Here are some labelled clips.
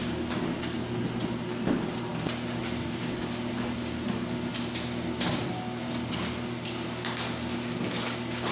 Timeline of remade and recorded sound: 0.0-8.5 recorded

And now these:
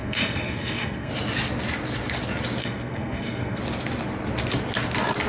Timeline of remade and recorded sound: 0.0-1.1 remade; 1.1-2.6 recorded; 2.6-3.6 remade; 3.6-5.3 recorded

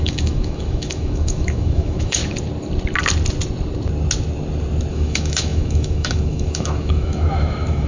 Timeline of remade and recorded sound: 0.0-2.2 remade; 2.2-4.9 recorded; 4.9-7.9 remade

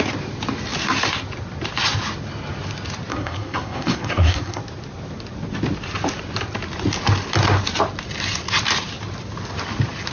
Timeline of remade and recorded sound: 0.0-3.1 recorded; 3.1-4.6 remade; 4.6-10.1 recorded